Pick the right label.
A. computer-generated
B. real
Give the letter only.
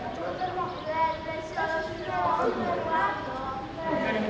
B